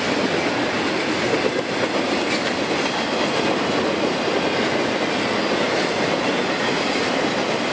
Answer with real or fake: real